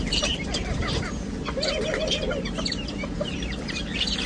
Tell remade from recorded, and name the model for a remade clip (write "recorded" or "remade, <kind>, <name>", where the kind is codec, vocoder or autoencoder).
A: remade, vocoder, BigVGAN v2